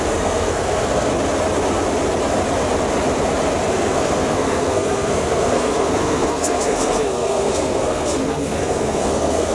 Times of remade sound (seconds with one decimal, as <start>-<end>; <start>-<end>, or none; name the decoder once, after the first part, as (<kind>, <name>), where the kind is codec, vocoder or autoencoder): 0.0-1.1 (codec, SNAC); 3.7-9.5